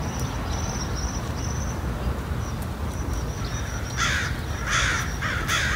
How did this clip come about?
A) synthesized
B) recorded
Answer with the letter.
B